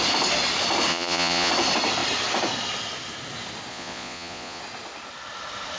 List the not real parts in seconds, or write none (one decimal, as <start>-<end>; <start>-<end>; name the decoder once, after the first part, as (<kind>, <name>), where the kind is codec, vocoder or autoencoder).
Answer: 0.9-1.5 (vocoder, Vocos); 3.7-4.6